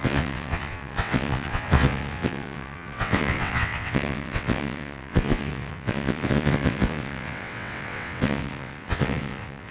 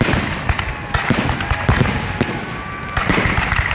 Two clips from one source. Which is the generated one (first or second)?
first